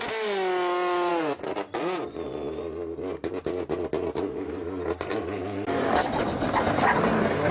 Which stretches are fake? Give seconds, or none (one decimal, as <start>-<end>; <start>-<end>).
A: none